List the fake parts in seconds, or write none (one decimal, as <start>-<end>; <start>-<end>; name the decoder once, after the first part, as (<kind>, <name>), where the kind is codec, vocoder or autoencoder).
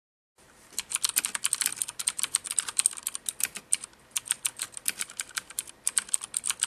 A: 1.7-5.7 (vocoder, BigVGAN v2)